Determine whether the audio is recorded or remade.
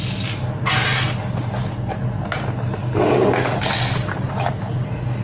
recorded